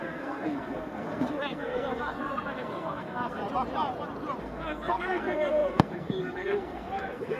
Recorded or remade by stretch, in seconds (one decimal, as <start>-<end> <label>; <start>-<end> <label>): 0.0-3.4 remade; 3.4-4.4 recorded; 4.4-7.4 remade